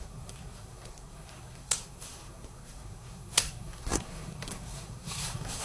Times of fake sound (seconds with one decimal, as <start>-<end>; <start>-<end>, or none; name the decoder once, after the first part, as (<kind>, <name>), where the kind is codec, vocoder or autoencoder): 0.0-5.6 (codec, SNAC)

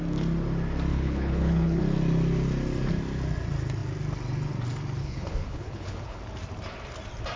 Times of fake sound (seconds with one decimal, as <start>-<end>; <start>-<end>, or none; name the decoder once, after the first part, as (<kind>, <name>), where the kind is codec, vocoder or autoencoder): 0.9-1.8 (codec, HILCodec); 5.0-6.2